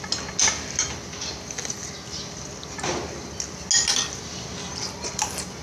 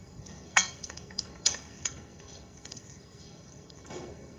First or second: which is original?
first